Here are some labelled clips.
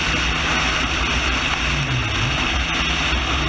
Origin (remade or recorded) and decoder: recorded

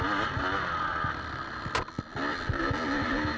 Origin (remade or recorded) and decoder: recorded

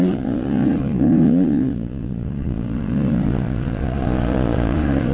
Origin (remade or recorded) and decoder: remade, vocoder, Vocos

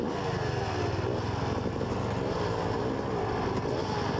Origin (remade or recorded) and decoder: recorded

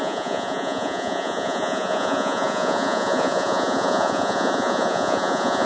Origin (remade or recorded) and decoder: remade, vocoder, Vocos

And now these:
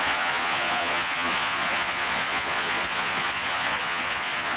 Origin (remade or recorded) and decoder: remade, vocoder, Vocos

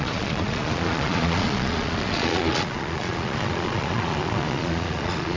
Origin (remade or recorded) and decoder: remade, vocoder, Vocos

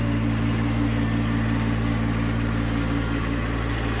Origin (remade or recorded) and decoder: recorded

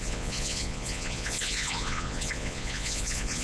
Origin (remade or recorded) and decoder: remade, vocoder, Vocos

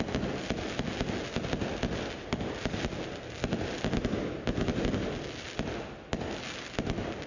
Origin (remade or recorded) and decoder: recorded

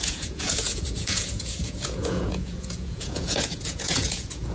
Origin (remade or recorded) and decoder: remade, vocoder, Vocos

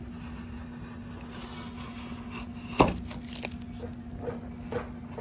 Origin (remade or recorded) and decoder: recorded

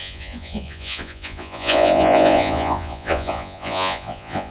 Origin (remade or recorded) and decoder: remade, vocoder, Vocos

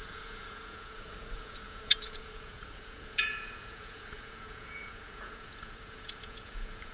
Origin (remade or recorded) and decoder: remade, vocoder, Vocos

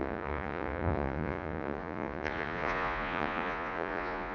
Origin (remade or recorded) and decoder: remade, vocoder, Vocos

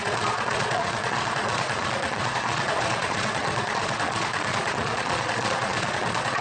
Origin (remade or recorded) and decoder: remade, vocoder, Vocos